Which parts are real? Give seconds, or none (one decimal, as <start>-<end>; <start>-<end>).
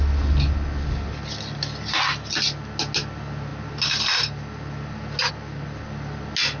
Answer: 0.0-6.6